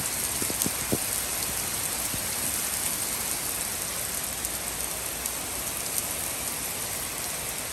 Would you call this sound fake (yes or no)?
no